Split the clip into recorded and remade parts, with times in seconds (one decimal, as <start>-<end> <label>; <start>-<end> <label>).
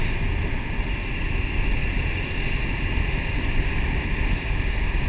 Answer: 0.0-5.1 recorded